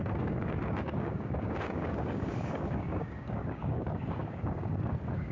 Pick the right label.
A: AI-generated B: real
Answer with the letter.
A